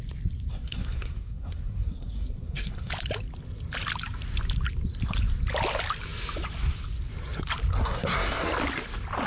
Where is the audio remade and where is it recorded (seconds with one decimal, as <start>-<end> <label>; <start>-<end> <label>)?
0.0-0.5 recorded; 0.5-2.9 remade; 2.9-7.7 recorded; 7.7-8.5 remade; 8.5-9.3 recorded

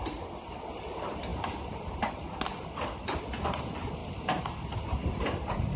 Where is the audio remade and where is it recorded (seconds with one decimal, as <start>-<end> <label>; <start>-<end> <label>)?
0.0-5.8 recorded

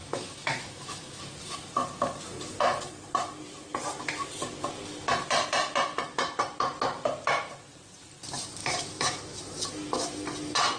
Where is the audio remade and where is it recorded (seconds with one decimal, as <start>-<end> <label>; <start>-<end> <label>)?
0.0-1.2 remade; 1.2-8.6 recorded; 8.6-9.4 remade; 9.4-10.8 recorded

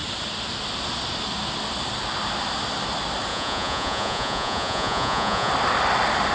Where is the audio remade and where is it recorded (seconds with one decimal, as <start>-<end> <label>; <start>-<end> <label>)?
0.0-3.3 recorded; 3.3-5.5 remade; 5.5-6.3 recorded

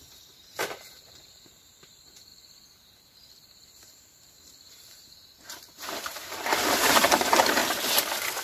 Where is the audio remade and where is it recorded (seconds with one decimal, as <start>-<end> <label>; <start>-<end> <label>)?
0.0-7.6 remade; 7.6-8.4 recorded

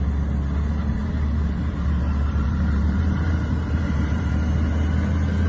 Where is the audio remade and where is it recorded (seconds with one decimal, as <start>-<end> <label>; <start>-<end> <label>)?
0.0-1.0 recorded; 1.0-4.3 remade; 4.3-5.5 recorded

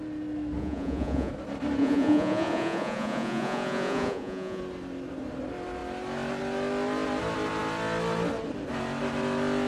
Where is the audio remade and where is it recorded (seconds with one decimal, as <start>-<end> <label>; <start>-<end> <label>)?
0.0-0.6 recorded; 0.6-1.3 remade; 1.3-1.8 recorded; 1.8-4.6 remade; 4.6-9.7 recorded

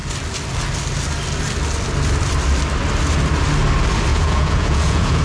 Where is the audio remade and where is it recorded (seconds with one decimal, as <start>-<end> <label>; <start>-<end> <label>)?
0.0-4.1 recorded; 4.1-5.2 remade